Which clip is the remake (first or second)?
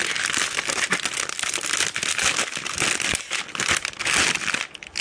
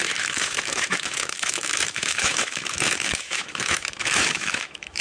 second